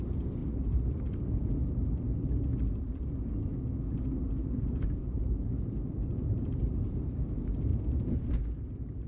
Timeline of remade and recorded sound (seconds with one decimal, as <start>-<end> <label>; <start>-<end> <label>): 0.0-0.4 recorded; 0.4-1.2 remade; 1.2-4.4 recorded; 4.4-7.3 remade; 7.3-7.7 recorded; 7.7-9.1 remade